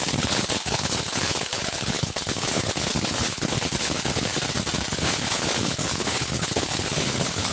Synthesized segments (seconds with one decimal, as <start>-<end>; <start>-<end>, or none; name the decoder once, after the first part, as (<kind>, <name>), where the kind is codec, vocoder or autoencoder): 0.0-4.3 (codec, HILCodec); 4.9-7.5